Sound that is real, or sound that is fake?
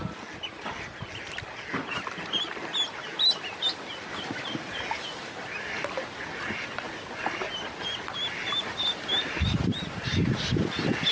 real